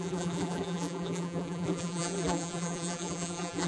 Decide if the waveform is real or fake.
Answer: fake